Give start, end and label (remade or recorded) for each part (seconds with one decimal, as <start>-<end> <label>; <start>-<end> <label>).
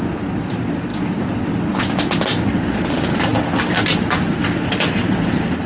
0.0-5.7 recorded